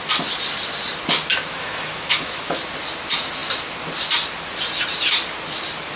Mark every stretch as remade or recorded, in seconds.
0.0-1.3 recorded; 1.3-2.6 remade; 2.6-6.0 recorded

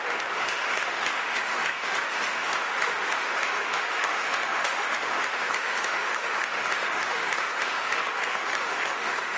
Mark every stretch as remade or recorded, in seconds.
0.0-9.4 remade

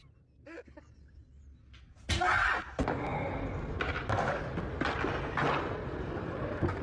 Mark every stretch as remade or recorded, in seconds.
0.0-6.8 recorded

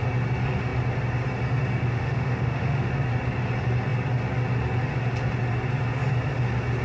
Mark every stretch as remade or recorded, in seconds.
0.0-1.8 recorded; 1.8-2.9 remade; 2.9-6.8 recorded

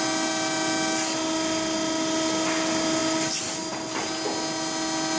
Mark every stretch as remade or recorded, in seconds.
0.0-5.2 recorded

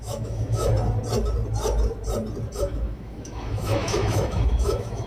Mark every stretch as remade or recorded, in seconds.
0.0-0.7 remade; 0.7-2.6 recorded; 2.6-5.1 remade